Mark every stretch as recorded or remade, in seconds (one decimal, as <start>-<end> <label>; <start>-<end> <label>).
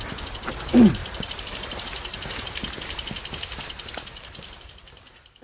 0.0-5.4 remade